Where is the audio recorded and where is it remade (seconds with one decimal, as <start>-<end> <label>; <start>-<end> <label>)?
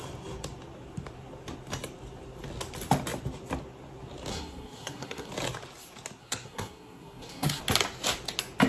0.0-4.3 recorded; 4.3-5.3 remade; 5.3-6.2 recorded; 6.2-7.6 remade; 7.6-8.7 recorded